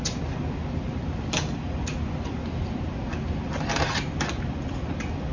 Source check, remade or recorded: recorded